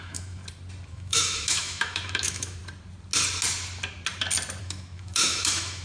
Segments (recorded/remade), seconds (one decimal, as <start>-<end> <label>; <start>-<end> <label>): 0.0-0.4 remade; 0.4-0.9 recorded; 0.9-2.6 remade; 2.6-4.6 recorded; 4.6-5.8 remade